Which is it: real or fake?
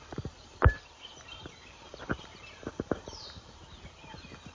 fake